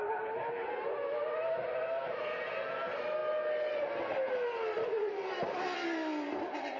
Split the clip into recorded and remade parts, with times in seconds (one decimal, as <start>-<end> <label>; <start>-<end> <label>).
0.0-6.8 recorded